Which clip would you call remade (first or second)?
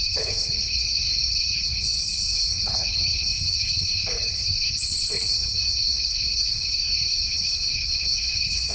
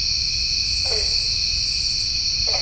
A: first